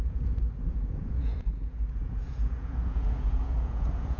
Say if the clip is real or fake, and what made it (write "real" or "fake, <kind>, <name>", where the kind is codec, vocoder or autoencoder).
fake, vocoder, Vocos